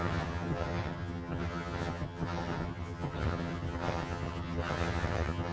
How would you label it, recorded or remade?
remade